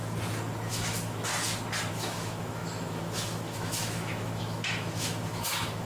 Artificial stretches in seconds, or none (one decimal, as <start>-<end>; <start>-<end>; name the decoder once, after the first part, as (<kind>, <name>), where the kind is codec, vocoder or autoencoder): 0.7-1.3 (autoencoder, DAC-VAE); 1.9-5.8